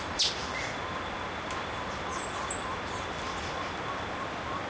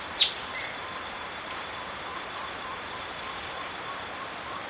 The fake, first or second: second